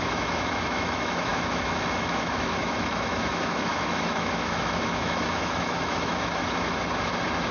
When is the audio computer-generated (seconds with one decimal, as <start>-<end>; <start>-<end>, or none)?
0.0-6.4